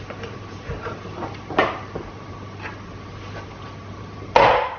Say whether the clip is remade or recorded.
recorded